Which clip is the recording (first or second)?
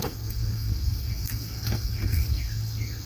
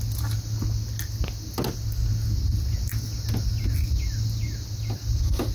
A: second